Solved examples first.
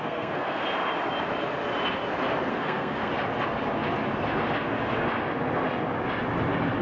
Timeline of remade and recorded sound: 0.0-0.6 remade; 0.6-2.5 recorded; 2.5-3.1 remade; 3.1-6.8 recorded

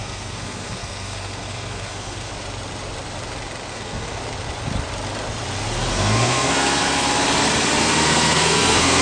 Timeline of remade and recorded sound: 0.0-2.3 remade; 2.3-3.7 recorded; 3.7-4.2 remade; 4.2-5.9 recorded; 5.9-6.8 remade; 6.8-7.8 recorded; 7.8-9.0 remade